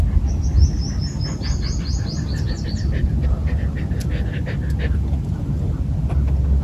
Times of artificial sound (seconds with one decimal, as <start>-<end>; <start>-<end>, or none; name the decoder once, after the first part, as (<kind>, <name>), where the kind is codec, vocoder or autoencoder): none

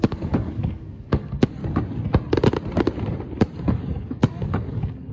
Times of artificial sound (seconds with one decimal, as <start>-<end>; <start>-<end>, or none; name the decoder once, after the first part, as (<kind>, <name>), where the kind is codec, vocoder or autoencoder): 0.0-1.6 (codec, DAC); 3.6-5.1

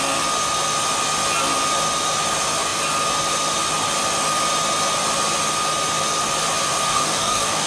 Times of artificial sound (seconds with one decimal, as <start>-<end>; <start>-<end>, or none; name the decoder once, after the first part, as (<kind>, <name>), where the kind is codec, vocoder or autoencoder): 6.9-7.7 (codec, DAC)

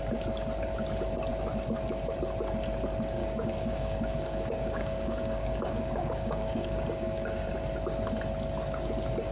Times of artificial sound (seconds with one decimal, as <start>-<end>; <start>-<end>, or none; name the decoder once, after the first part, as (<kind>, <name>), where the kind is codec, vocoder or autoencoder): 3.2-7.5 (codec, DAC)

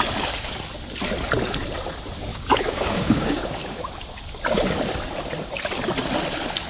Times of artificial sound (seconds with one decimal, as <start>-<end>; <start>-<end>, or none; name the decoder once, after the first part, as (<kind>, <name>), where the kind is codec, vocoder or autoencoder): 2.3-3.4 (codec, DAC)

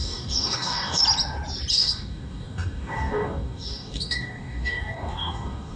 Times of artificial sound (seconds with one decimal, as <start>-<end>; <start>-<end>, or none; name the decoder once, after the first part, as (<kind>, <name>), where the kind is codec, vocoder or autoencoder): 0.0-1.0 (codec, DAC); 1.7-5.8

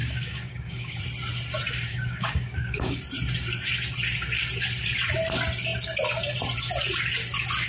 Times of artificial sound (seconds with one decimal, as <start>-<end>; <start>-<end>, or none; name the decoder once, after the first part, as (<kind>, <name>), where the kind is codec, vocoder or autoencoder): 0.0-1.0 (codec, DAC); 1.9-3.0